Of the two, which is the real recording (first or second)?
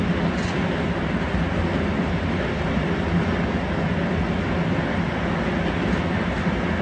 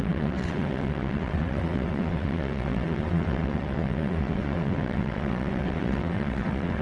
first